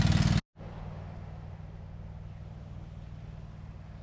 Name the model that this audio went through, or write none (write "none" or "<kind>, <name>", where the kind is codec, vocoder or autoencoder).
none